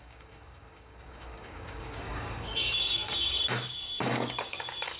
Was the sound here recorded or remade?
remade